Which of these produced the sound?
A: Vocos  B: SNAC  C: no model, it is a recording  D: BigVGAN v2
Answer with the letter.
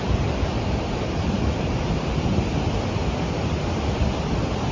C